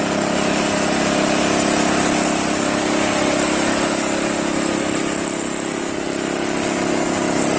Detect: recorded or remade recorded